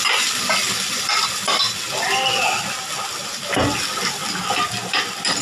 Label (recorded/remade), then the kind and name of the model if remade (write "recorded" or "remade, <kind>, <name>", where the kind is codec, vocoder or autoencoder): recorded